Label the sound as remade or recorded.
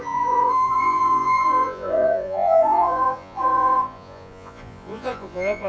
remade